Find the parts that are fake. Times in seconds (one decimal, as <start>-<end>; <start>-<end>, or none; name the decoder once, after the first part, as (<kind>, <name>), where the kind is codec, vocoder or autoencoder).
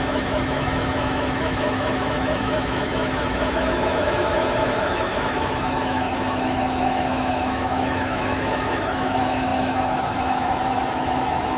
0.0-11.6 (autoencoder, DAC-VAE)